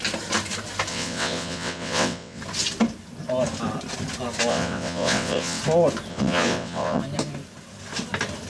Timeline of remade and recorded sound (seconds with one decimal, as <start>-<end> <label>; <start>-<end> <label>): 0.0-0.9 recorded; 0.9-2.4 remade; 2.4-4.5 recorded; 4.5-5.6 remade; 5.6-6.1 recorded; 6.1-7.0 remade; 7.0-8.5 recorded